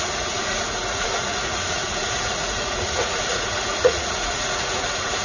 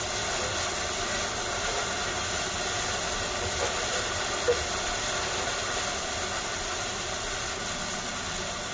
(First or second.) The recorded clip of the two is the second